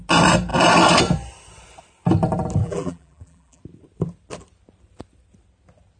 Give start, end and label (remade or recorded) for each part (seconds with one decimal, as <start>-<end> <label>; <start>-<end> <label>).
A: 0.0-2.6 recorded; 2.6-3.6 remade; 3.6-6.0 recorded